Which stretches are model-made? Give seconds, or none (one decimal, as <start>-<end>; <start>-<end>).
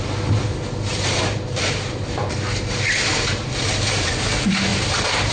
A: 0.9-4.1